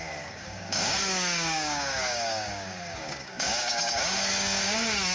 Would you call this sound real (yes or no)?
no